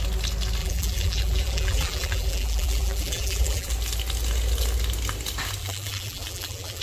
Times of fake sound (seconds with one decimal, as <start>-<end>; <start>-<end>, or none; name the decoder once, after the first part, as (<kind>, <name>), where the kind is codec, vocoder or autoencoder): 0.6-3.7 (vocoder, BigVGAN v2); 5.6-6.8